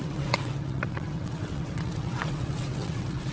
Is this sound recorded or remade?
remade